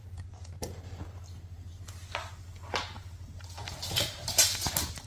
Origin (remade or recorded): recorded